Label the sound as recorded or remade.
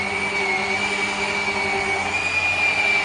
recorded